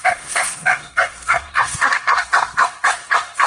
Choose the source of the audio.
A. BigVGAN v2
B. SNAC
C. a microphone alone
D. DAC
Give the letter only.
B